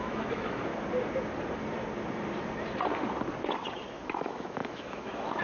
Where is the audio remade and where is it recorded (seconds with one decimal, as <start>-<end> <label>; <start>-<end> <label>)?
0.0-0.7 remade; 0.7-3.9 recorded; 3.9-5.4 remade